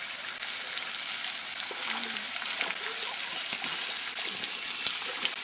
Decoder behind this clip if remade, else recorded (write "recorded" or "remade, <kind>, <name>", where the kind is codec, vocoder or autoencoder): recorded